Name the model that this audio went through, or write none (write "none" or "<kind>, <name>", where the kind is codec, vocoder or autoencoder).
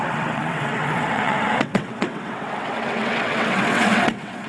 vocoder, WaveNeXt